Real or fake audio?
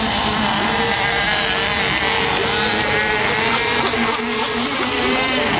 real